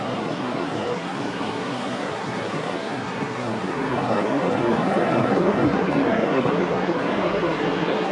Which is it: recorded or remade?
remade